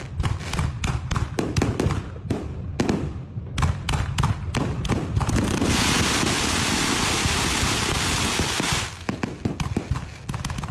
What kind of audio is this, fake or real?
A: real